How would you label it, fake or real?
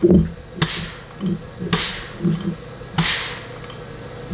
real